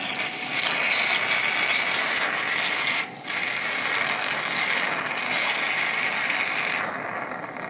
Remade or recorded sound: recorded